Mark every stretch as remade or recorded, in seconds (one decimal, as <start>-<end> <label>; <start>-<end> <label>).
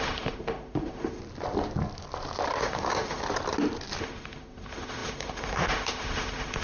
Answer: 0.0-1.2 remade; 1.2-2.6 recorded; 2.6-3.2 remade; 3.2-4.0 recorded; 4.0-6.6 remade